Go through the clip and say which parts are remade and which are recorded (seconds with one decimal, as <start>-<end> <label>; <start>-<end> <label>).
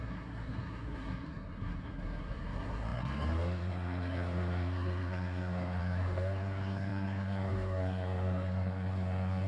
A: 0.0-9.5 remade